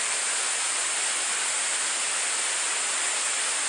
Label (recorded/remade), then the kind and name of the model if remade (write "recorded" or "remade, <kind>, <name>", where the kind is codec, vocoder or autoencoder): recorded